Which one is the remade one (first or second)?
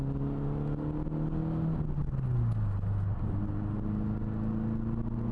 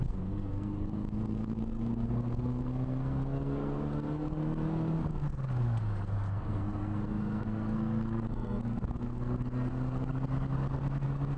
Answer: second